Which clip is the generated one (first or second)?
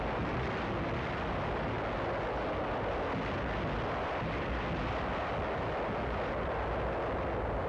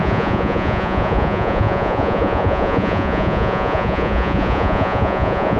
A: second